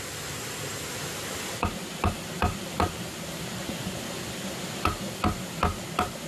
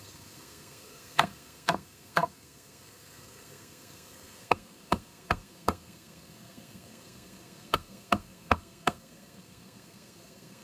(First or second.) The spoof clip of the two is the second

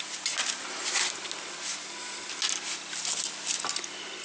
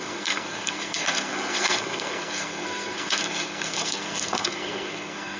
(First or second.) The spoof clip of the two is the second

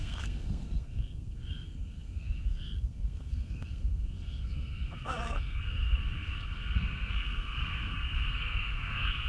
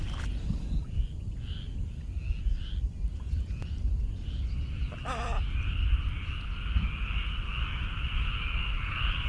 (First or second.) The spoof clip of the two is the first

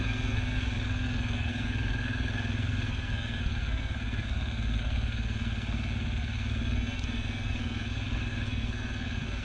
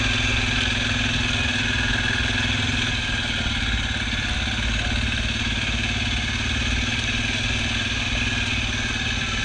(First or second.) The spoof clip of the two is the first